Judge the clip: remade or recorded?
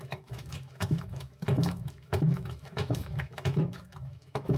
remade